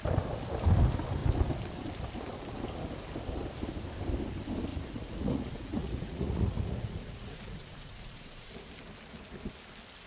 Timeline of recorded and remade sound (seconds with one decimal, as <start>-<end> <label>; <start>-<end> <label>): 0.0-4.7 recorded; 4.7-8.5 remade; 8.5-10.1 recorded